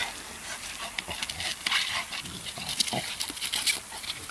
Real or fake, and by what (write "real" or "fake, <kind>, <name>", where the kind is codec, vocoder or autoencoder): real